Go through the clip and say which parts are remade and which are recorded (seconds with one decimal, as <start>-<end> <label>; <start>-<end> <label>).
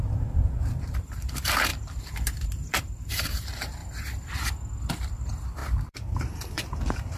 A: 0.0-3.8 remade; 3.8-4.9 recorded; 4.9-7.2 remade